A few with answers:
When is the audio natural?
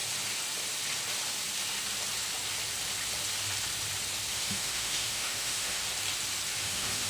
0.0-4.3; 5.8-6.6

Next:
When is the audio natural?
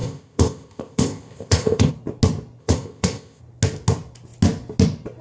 1.9-2.6; 3.4-5.2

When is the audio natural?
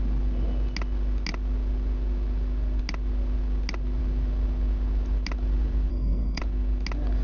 0.0-5.9; 6.4-7.2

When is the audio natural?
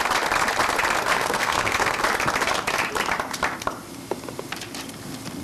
0.0-1.1; 2.0-5.4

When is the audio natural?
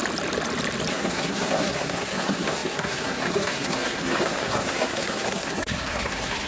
0.0-0.9